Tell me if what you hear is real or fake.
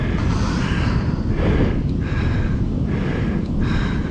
fake